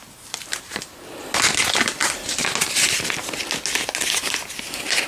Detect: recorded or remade recorded